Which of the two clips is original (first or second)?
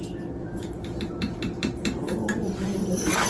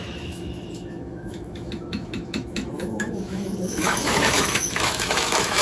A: first